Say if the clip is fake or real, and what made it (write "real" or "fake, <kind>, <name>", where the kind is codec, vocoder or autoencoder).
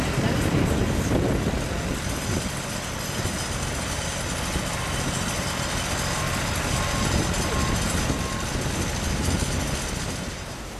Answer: real